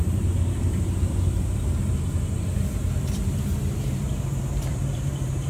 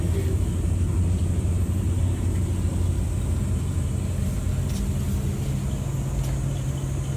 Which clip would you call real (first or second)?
second